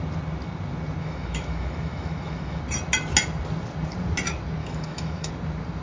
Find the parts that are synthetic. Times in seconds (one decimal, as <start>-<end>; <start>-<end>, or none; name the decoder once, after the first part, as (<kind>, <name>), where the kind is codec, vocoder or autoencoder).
1.0-2.6 (autoencoder, DAC-VAE); 4.6-5.3